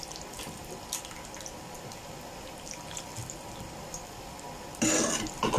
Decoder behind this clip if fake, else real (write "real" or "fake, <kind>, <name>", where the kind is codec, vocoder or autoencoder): real